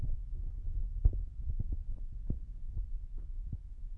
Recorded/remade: recorded